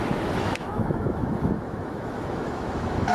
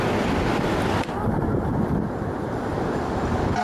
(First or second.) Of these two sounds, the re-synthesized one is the first